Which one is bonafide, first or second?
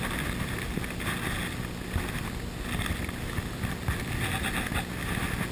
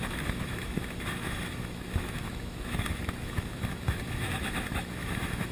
first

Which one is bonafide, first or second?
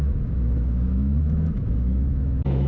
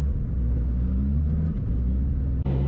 second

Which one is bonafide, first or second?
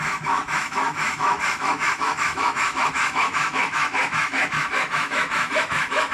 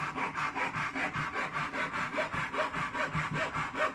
second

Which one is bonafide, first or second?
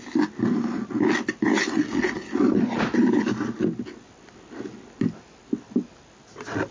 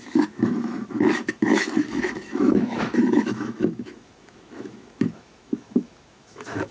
first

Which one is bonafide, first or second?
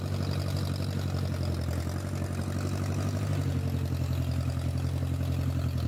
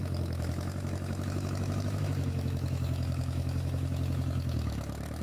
first